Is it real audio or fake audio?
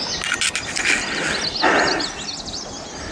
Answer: real